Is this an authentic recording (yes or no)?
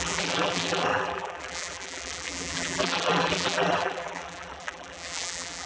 no